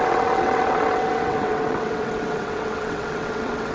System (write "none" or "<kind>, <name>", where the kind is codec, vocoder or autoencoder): vocoder, WaveNeXt